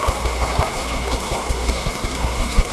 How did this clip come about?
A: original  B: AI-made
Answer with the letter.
B